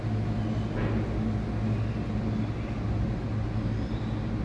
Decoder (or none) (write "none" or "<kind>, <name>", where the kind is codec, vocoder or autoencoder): none